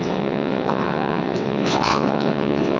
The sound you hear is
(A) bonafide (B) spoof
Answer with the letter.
B